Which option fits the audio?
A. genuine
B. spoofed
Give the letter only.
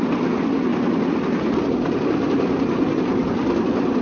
A